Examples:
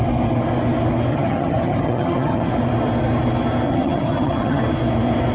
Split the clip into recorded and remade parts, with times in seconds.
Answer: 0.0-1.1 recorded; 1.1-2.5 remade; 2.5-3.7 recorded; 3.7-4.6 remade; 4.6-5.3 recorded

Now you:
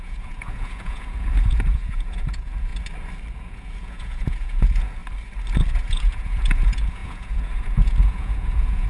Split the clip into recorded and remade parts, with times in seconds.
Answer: 0.0-2.7 remade; 2.7-3.3 recorded; 3.3-5.0 remade; 5.0-5.7 recorded; 5.7-8.9 remade

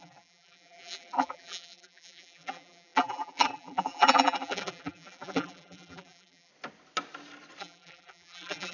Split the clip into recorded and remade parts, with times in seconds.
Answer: 0.0-6.5 remade; 6.5-7.6 recorded; 7.6-8.7 remade

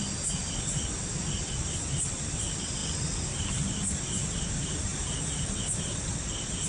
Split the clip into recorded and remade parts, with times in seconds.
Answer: 0.0-6.7 recorded